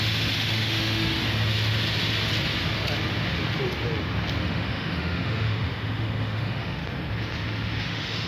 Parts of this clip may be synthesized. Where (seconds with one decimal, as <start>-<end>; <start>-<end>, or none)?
0.0-1.2; 4.4-6.8; 7.8-8.3